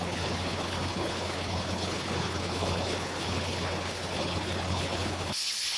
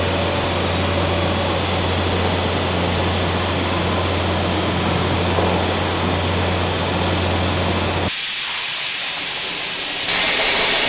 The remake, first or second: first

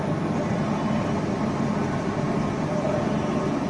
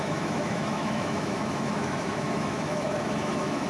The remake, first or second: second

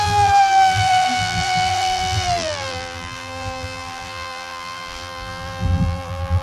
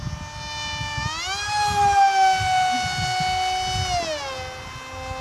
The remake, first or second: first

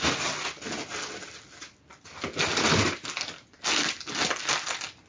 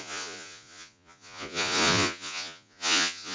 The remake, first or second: second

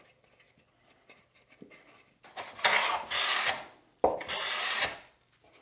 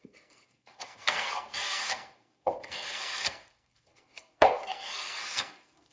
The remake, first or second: second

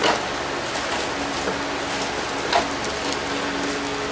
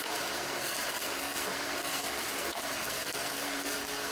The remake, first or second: second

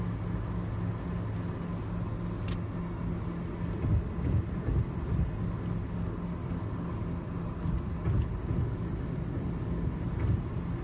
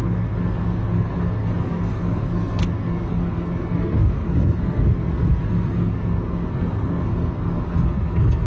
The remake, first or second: second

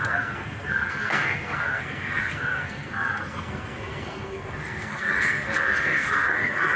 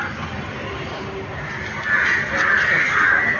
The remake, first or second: first